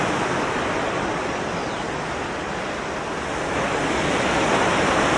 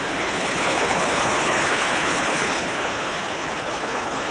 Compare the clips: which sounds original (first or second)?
first